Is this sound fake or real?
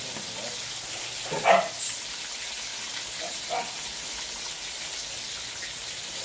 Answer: real